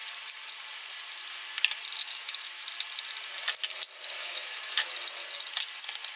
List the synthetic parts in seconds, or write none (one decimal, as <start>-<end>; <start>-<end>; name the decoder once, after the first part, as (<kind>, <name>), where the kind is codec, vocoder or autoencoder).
2.0-2.6 (autoencoder, DAC-VAE); 4.2-4.9